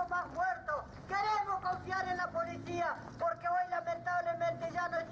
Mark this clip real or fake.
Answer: real